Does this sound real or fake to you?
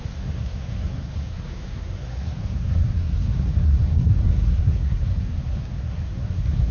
fake